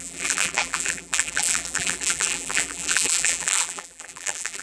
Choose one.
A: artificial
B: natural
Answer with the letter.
A